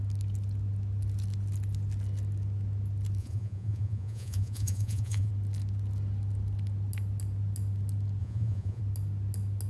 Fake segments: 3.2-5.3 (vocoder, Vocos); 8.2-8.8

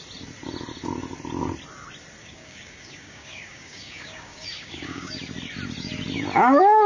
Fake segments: 2.2-5.1 (codec, DAC)

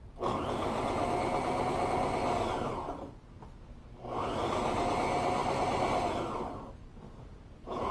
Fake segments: 6.9-7.9 (vocoder, Vocos)

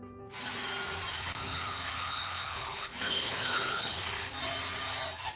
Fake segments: 1.1-4.3 (codec, HILCodec)

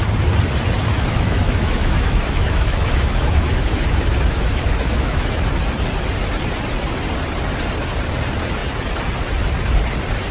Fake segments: 0.9-5.3 (autoencoder, DAC-VAE)

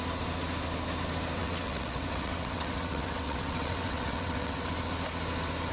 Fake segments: 1.4-4.7 (vocoder, WaveNeXt)

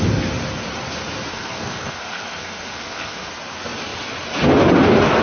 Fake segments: 1.3-3.3 (codec, SNAC)